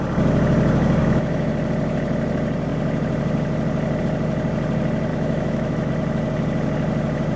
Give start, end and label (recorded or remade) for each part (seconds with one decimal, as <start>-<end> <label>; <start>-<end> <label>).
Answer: 0.0-1.0 recorded; 1.0-1.5 remade; 1.5-5.1 recorded; 5.1-5.9 remade; 5.9-7.4 recorded